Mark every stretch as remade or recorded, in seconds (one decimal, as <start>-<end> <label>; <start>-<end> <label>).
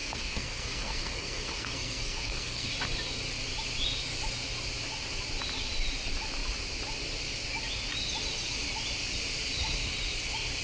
0.0-2.7 remade; 2.7-10.6 recorded